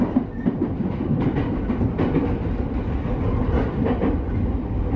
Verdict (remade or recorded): recorded